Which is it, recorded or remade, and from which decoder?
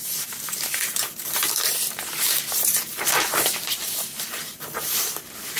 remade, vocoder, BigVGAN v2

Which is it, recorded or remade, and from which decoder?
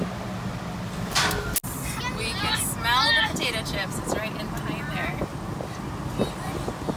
recorded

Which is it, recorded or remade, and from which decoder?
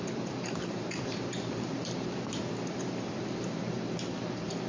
remade, vocoder, BigVGAN v2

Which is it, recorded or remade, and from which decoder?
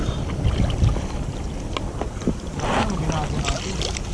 recorded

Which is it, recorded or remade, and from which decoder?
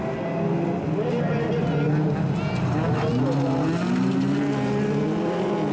recorded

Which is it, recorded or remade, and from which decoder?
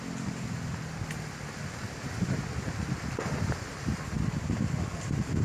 recorded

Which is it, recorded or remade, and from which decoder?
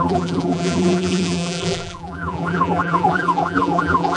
remade, vocoder, BigVGAN v2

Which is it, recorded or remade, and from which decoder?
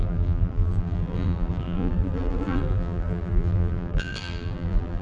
remade, vocoder, BigVGAN v2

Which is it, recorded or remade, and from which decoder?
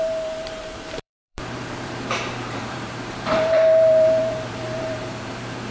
remade, vocoder, BigVGAN v2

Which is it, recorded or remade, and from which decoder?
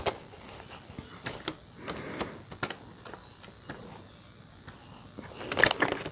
recorded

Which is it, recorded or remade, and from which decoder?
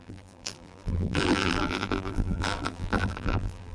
remade, vocoder, BigVGAN v2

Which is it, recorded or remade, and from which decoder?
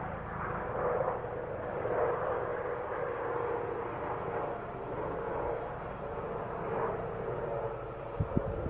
recorded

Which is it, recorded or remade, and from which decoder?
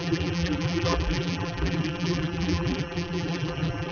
remade, vocoder, BigVGAN v2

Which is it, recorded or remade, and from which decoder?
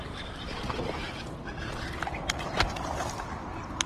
recorded